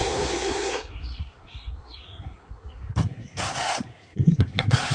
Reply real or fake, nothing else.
fake